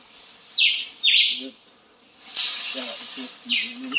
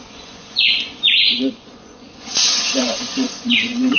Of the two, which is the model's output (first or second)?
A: second